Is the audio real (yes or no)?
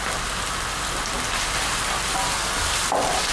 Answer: yes